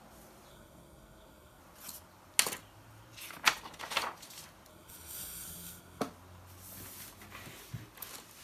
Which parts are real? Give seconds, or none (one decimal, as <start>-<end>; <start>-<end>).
0.0-0.5; 1.6-4.7; 6.0-8.4